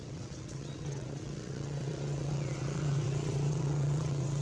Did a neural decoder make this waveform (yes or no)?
yes